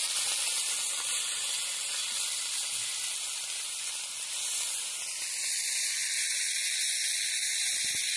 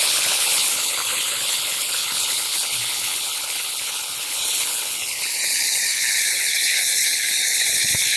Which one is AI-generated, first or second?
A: second